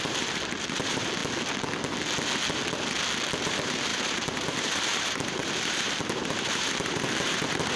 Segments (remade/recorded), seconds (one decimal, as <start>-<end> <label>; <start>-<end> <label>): 0.0-1.2 remade; 1.2-3.4 recorded; 3.4-7.8 remade